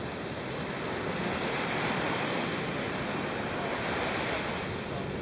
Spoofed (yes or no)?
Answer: no